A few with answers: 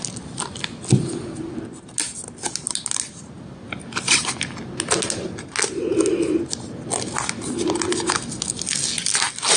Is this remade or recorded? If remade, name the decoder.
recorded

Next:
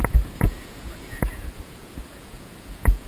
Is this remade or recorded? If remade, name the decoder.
remade, vocoder, Vocos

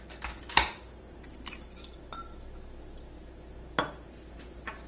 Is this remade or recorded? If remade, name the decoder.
recorded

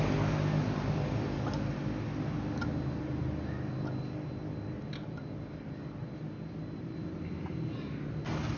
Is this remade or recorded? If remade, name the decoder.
recorded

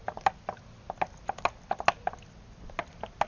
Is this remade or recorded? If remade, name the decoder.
recorded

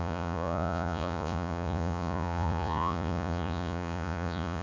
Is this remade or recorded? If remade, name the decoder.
remade, vocoder, Vocos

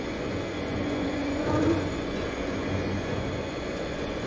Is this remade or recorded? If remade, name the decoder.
remade, vocoder, Vocos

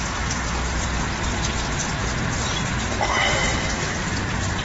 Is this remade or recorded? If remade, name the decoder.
recorded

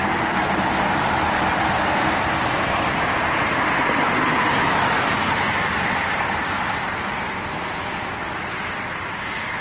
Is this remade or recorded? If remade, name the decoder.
recorded